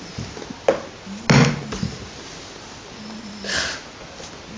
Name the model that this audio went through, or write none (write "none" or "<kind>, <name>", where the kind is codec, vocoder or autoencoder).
none